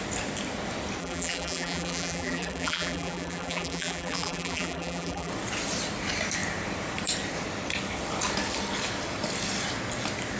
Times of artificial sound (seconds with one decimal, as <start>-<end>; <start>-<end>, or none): 1.0-5.3